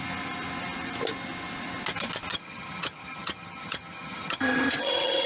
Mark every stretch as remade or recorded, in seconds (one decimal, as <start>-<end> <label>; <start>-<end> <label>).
0.0-2.3 recorded; 2.3-5.3 remade